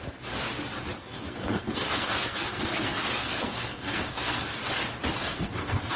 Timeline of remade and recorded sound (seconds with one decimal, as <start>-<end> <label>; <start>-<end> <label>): 0.0-1.0 recorded; 1.0-4.6 remade; 4.6-5.2 recorded; 5.2-6.0 remade